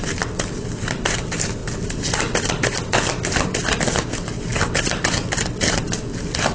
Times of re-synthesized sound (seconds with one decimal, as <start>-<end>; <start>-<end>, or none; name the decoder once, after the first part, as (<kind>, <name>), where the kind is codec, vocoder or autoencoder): none